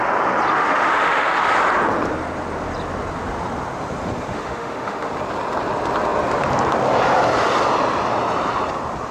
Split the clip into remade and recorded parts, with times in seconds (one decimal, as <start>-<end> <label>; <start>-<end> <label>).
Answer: 0.0-0.5 recorded; 0.5-1.5 remade; 1.5-4.3 recorded; 4.3-5.1 remade; 5.1-9.1 recorded